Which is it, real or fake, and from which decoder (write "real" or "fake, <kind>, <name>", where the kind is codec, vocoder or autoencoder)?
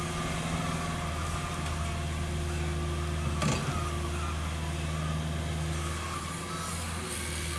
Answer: real